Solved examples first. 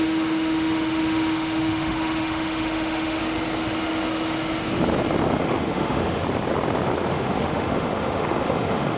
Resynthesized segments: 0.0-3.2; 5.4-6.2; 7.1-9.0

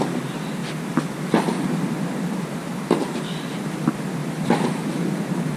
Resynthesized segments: 4.2-5.6

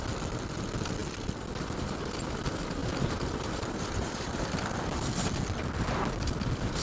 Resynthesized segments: 2.8-5.1

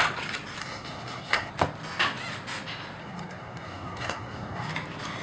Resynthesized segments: 0.6-1.5; 3.0-4.7